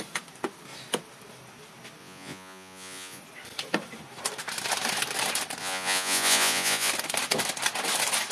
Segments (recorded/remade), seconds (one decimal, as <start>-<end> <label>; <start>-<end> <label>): 0.0-2.0 recorded; 2.0-3.2 remade; 3.2-5.6 recorded; 5.6-6.9 remade; 6.9-8.3 recorded